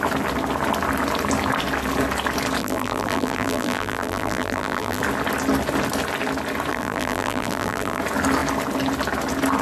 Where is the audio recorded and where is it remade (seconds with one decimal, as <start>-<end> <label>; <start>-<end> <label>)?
0.0-2.6 recorded; 2.6-5.0 remade; 5.0-6.7 recorded; 6.7-8.0 remade; 8.0-9.6 recorded